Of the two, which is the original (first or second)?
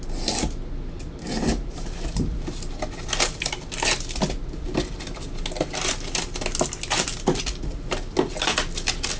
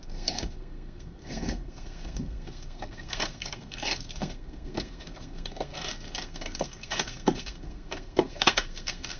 first